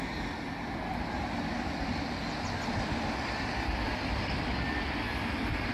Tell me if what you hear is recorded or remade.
recorded